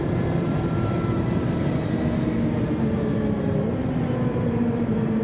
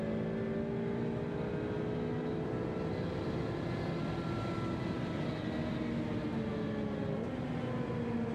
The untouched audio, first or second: second